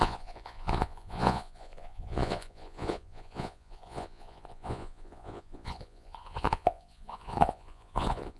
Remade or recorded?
remade